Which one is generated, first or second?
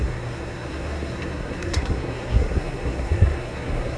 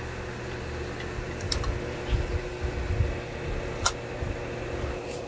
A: first